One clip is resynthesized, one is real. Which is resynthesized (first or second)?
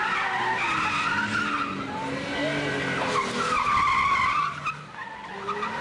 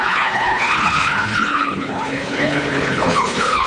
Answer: second